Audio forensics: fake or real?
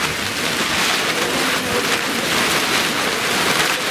real